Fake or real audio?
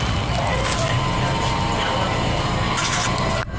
real